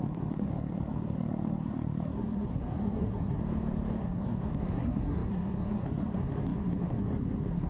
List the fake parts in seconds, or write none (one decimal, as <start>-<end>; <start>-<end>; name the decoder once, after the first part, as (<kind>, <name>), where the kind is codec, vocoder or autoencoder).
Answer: 0.0-3.4 (codec, SNAC); 4.0-7.7